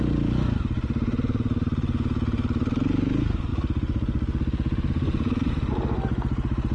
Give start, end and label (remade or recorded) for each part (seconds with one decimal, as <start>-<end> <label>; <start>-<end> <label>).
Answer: 0.0-6.7 recorded